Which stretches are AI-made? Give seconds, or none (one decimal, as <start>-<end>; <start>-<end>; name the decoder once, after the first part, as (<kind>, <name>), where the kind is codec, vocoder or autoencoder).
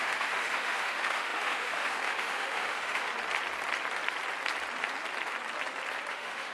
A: 0.0-3.1 (autoencoder, DAC-VAE); 6.1-6.5